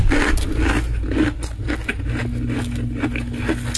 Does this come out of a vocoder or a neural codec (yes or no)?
no